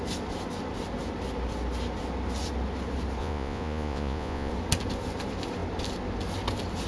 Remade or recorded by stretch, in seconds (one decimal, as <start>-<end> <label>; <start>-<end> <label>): 0.0-3.2 recorded; 3.2-4.5 remade; 4.5-6.9 recorded